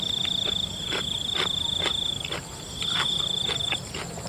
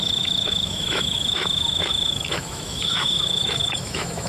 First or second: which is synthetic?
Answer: second